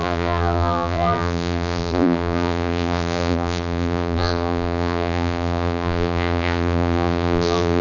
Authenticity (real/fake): fake